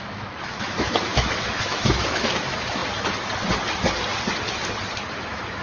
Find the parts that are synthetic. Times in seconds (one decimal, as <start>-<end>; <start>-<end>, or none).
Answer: 0.0-2.8; 5.1-5.6